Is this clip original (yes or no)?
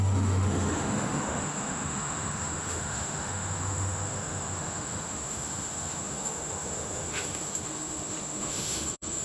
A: no